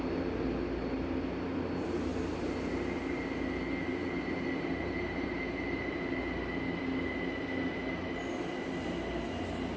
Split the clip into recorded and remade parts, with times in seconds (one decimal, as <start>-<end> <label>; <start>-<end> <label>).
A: 0.0-9.8 recorded